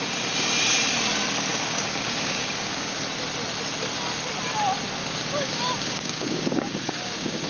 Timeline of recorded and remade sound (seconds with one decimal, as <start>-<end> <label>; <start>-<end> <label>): 0.0-1.5 recorded; 1.5-3.0 remade; 3.0-5.0 recorded; 5.0-7.5 remade